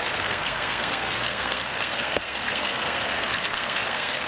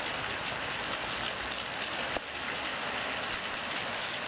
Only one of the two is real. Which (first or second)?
second